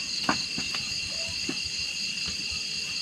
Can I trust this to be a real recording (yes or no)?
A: yes